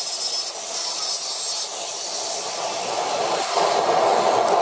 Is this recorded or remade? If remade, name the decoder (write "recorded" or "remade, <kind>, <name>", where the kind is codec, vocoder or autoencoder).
recorded